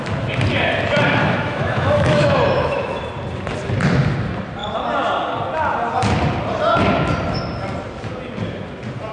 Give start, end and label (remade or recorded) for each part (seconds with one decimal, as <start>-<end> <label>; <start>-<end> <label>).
0.0-1.2 recorded; 1.2-3.0 remade; 3.0-9.1 recorded

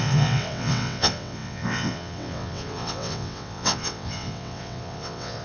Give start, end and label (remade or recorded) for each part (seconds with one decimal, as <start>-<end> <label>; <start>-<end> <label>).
0.0-5.4 remade

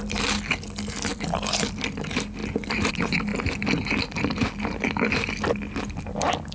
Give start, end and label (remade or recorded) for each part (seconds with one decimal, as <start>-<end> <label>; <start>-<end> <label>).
0.0-1.1 recorded; 1.1-2.0 remade; 2.0-2.4 recorded; 2.4-2.9 remade; 2.9-6.5 recorded

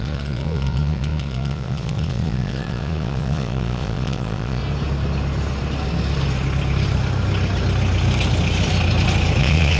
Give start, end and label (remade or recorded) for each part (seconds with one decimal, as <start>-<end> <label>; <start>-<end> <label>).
0.0-4.6 remade; 4.6-9.4 recorded; 9.4-9.8 remade

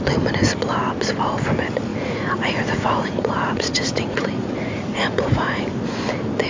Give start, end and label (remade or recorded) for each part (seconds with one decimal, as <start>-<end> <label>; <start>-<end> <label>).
0.0-1.9 recorded; 1.9-5.6 remade; 5.6-6.5 recorded

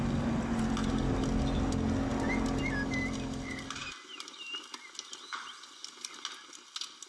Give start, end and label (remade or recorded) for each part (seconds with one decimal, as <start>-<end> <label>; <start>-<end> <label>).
0.0-7.1 recorded

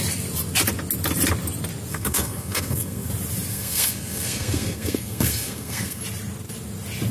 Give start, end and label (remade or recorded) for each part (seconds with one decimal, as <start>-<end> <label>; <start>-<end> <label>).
0.0-1.9 recorded; 1.9-3.1 remade; 3.1-3.5 recorded; 3.5-6.0 remade; 6.0-7.1 recorded